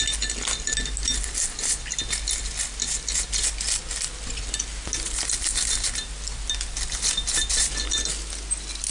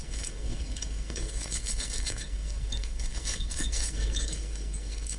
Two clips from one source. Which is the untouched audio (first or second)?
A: first